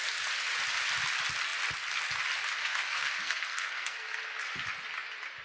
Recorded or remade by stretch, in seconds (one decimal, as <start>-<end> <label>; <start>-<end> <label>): 0.0-2.6 recorded; 2.6-4.2 remade; 4.2-5.4 recorded